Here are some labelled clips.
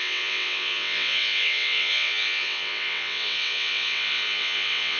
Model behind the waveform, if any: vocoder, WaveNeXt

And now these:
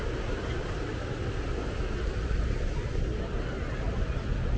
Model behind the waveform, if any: none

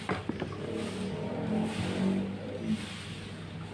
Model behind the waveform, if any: none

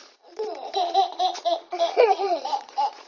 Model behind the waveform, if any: vocoder, Vocos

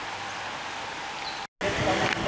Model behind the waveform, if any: none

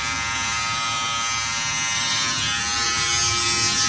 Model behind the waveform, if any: none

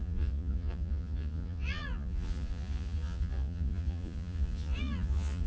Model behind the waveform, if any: vocoder, Vocos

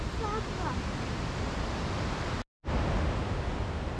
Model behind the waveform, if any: none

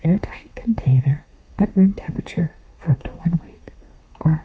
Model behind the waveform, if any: codec, SNAC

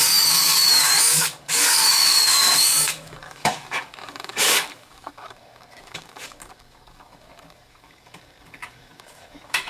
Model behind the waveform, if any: codec, DAC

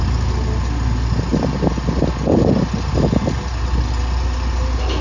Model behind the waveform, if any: none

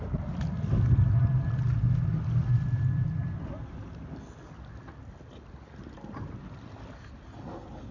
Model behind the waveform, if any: none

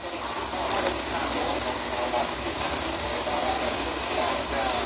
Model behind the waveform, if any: none